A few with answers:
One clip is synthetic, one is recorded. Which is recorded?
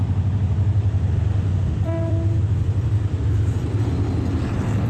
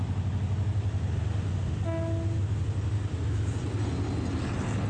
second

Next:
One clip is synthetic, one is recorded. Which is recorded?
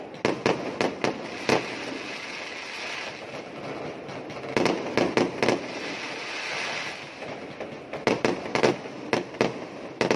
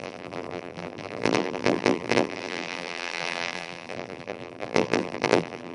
first